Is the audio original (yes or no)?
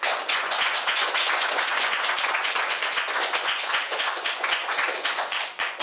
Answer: no